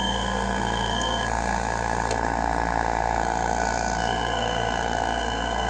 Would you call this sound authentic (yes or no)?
no